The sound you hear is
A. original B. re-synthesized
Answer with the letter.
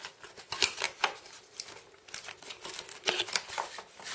A